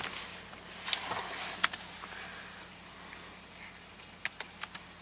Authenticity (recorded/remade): recorded